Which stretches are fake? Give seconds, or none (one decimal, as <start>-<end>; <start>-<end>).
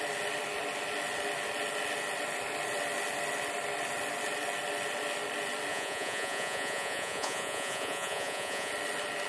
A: 5.7-8.7